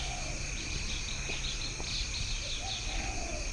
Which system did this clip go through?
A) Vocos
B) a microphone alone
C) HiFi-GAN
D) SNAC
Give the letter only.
B